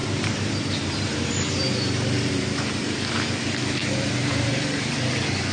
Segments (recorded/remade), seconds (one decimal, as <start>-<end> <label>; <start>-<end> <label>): 0.0-3.3 remade; 3.3-3.8 recorded; 3.8-4.9 remade; 4.9-5.5 recorded